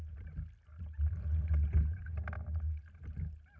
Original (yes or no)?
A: yes